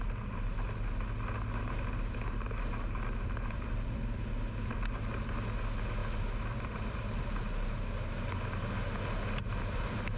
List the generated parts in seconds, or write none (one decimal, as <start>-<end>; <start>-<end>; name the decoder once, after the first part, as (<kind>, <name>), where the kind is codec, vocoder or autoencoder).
none